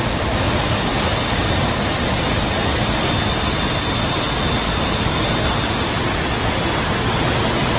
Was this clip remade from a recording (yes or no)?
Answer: no